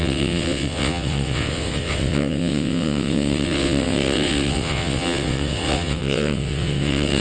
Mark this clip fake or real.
fake